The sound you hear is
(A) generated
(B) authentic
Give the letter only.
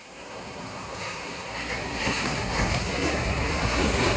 A